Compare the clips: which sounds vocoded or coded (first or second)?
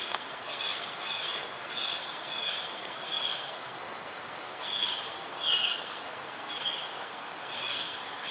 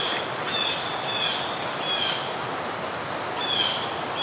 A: first